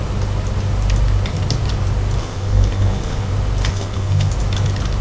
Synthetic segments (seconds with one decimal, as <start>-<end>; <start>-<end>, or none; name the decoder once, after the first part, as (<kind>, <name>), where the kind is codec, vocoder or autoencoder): 2.2-3.3 (codec, SNAC); 3.7-4.3